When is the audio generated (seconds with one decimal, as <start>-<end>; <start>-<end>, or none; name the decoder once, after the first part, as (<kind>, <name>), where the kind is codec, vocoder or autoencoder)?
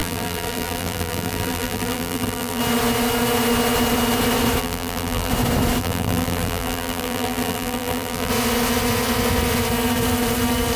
0.0-2.6 (vocoder, BigVGAN v2); 4.6-5.3; 5.8-8.3